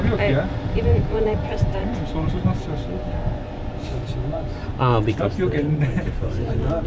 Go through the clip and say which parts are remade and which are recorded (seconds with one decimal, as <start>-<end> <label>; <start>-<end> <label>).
0.0-0.9 recorded; 0.9-2.3 remade; 2.3-3.0 recorded; 3.0-6.5 remade; 6.5-6.9 recorded